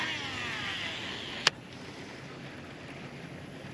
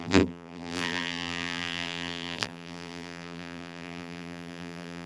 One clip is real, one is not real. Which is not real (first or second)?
second